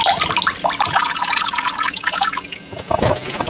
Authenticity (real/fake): real